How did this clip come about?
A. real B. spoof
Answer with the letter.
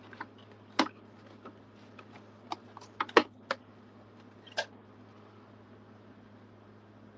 A